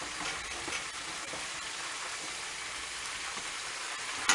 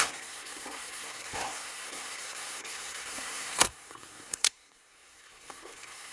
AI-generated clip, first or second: second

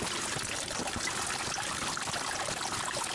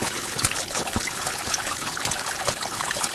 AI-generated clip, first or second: second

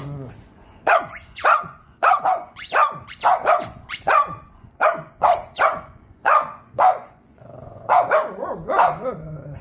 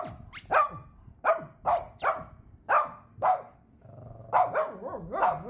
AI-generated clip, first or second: first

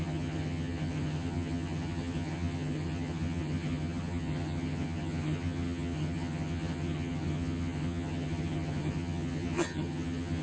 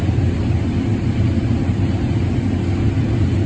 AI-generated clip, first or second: first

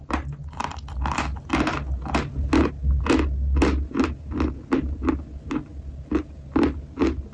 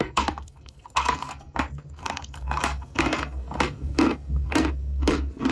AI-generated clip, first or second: second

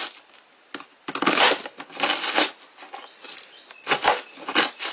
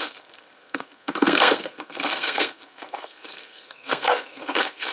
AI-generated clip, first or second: second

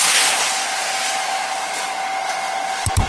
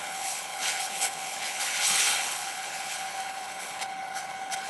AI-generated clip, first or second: second